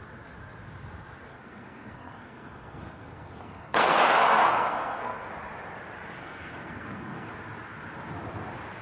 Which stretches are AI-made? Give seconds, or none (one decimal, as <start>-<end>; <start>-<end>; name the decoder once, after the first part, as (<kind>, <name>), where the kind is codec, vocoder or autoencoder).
1.3-5.3 (codec, SNAC); 6.2-7.3